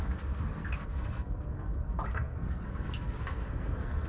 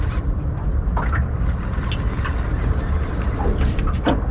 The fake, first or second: first